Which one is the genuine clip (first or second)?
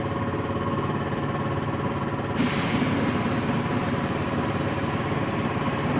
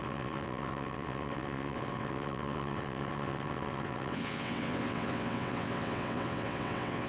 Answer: first